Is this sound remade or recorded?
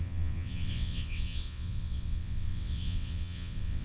remade